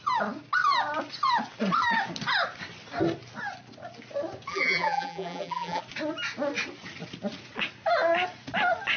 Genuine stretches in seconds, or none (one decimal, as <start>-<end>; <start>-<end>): 0.0-4.5; 5.8-9.0